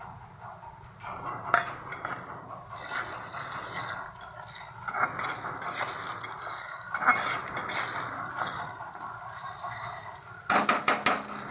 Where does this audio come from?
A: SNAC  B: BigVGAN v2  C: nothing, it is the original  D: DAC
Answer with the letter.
C